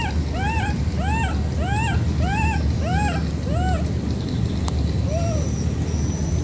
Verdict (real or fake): real